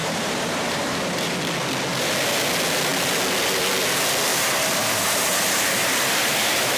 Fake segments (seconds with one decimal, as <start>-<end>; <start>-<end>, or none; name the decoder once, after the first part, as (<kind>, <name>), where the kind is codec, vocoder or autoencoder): 0.0-1.3 (vocoder, BigVGAN v2); 4.3-6.8

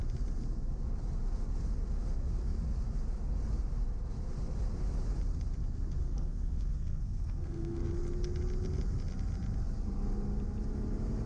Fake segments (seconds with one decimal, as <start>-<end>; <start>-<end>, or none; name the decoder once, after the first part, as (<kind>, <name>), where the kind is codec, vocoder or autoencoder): 6.0-7.9 (codec, SNAC)

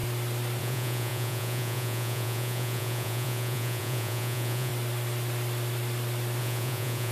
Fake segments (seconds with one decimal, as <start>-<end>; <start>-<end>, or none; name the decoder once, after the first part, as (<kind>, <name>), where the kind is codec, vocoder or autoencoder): 0.6-4.7 (vocoder, Vocos); 6.4-7.1